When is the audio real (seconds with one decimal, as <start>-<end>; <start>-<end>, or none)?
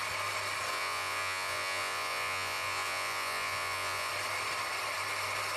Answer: 0.0-0.7; 4.1-5.6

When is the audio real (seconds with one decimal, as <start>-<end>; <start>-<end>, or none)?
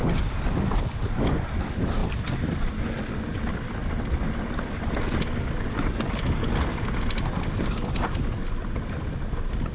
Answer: 0.0-9.7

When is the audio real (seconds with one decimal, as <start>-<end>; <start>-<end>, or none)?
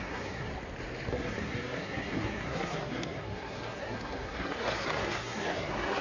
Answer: 0.5-1.1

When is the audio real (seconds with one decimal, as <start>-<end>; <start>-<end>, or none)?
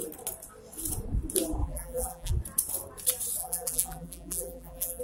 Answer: 0.0-1.6; 2.3-3.4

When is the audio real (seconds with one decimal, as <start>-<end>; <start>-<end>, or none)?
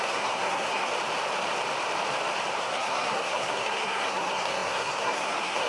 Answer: 0.9-2.6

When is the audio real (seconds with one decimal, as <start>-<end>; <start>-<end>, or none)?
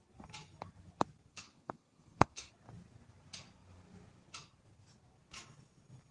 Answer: 0.0-1.3; 2.5-6.1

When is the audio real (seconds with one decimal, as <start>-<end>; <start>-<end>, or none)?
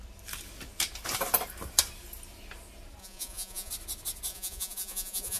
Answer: 0.0-3.0; 3.7-4.3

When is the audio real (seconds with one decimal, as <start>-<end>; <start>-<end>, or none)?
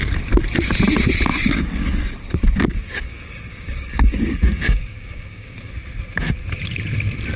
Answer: 0.0-1.3; 5.7-7.4